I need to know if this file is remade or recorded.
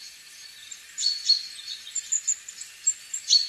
recorded